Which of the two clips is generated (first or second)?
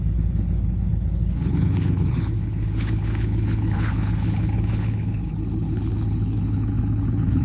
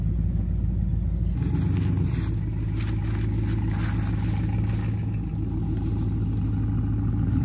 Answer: first